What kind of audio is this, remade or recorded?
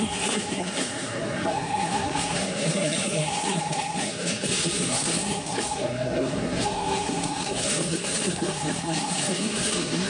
remade